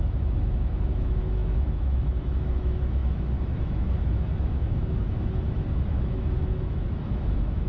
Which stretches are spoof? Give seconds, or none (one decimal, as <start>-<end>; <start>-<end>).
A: 0.0-7.7